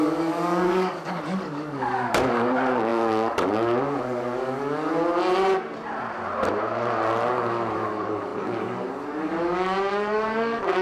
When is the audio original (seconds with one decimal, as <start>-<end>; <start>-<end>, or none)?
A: 4.9-7.3